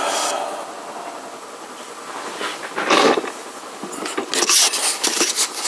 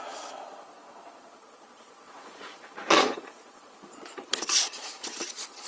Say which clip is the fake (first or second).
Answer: second